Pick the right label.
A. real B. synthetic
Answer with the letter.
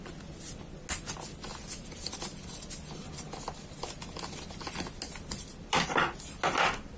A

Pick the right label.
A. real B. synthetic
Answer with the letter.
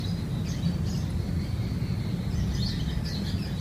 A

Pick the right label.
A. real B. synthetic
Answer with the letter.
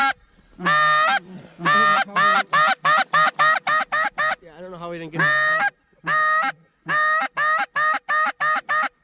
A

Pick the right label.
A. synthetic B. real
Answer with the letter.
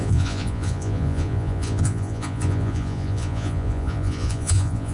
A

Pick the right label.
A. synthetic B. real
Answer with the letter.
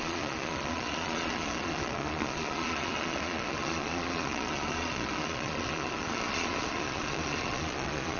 A